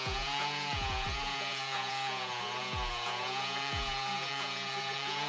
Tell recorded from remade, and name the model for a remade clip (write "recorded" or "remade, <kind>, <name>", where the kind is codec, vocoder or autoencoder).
remade, vocoder, Vocos